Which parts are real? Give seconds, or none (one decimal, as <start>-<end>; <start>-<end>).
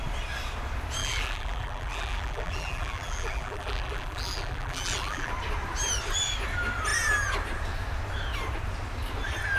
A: 0.0-1.0; 5.3-9.6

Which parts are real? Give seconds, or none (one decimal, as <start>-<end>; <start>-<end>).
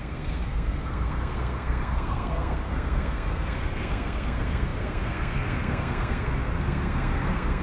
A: none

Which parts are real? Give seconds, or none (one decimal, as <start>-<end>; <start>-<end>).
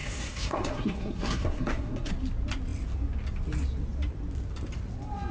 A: 2.1-5.3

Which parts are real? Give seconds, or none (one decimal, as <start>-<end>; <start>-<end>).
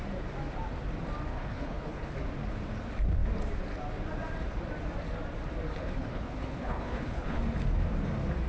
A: 0.0-1.3; 2.1-5.8; 7.4-8.5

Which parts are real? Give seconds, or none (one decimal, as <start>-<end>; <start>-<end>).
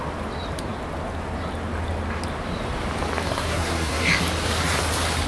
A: 0.0-3.3; 4.1-5.3